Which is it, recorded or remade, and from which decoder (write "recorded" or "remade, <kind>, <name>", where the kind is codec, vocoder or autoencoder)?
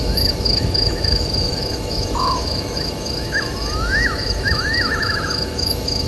remade, autoencoder, DAC-VAE